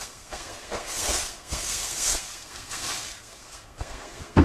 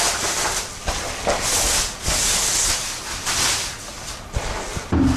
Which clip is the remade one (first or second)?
first